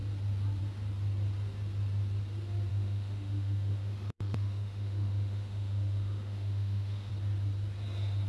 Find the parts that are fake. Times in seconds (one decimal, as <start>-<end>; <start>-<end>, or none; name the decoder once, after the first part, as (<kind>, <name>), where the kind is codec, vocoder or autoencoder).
2.7-7.1 (autoencoder, DAC-VAE)

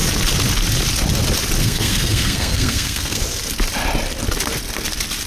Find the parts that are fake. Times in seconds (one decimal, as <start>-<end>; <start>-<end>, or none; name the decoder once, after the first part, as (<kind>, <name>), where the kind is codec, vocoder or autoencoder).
1.6-3.2 (codec, SNAC)

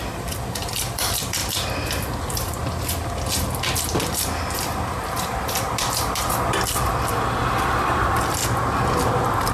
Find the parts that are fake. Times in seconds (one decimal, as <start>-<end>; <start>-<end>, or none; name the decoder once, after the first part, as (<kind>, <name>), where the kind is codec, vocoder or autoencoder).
0.0-1.4 (vocoder, BigVGAN v2); 2.2-2.6; 4.1-8.4

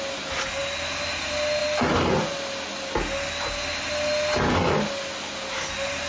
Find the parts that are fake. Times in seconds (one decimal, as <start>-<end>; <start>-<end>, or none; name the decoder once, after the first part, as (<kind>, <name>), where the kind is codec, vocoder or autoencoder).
none

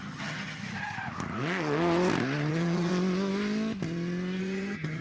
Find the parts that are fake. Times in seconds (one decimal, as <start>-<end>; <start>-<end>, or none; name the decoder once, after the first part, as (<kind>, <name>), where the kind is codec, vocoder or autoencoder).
0.0-0.6 (vocoder, HiFi-GAN); 2.5-2.9; 4.4-5.0